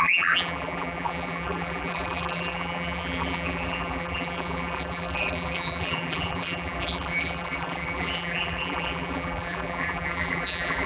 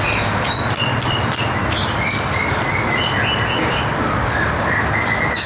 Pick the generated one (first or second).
first